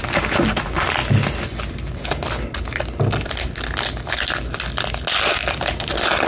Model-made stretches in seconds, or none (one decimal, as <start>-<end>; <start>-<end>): none